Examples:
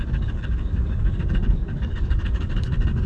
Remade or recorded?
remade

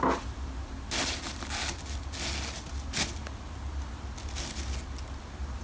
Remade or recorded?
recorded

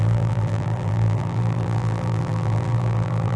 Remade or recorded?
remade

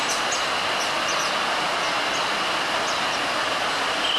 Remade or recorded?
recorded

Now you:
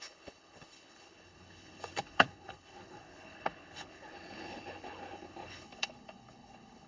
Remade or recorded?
remade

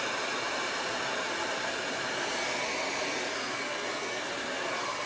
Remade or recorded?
recorded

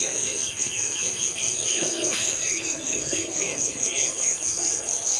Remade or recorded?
remade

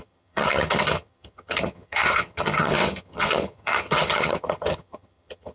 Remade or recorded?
remade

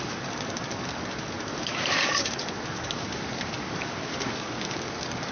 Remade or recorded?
remade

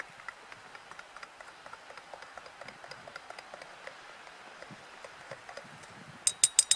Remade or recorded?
recorded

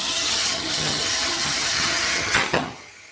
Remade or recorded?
remade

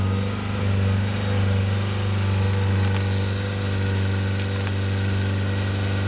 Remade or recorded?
recorded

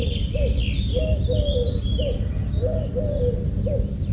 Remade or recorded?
recorded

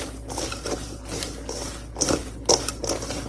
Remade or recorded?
recorded